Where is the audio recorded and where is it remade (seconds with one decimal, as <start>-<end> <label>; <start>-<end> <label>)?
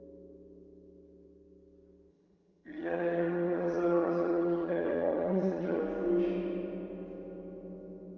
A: 0.0-2.1 recorded; 2.1-5.8 remade; 5.8-8.2 recorded